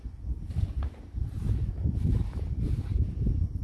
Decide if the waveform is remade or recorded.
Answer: recorded